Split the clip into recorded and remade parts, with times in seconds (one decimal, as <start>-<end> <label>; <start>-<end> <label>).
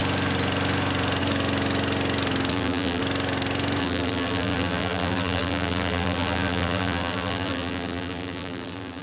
0.0-2.5 recorded; 2.5-3.0 remade; 3.0-3.8 recorded; 3.8-9.0 remade